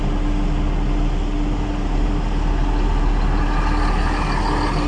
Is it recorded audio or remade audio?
recorded